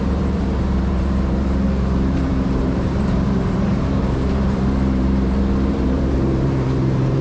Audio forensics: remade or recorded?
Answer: remade